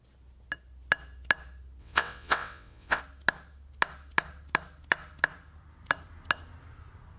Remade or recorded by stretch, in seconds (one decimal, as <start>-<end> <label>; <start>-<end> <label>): 0.0-1.8 recorded; 1.8-3.0 remade; 3.0-7.2 recorded